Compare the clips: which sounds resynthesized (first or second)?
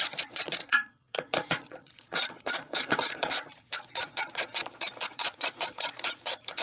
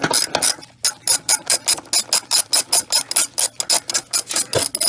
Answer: first